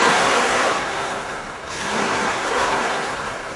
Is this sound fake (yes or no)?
yes